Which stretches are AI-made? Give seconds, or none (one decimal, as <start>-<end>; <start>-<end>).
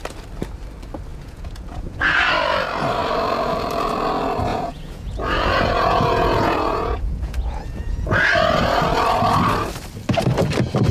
1.1-2.3; 4.5-8.3